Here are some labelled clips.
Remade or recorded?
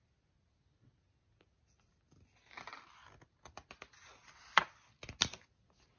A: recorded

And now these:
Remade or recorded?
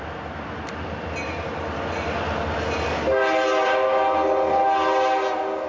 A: recorded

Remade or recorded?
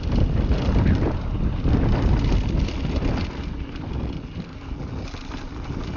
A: recorded